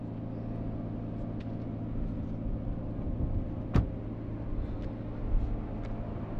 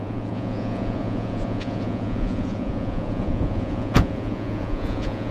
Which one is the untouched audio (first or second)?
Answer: first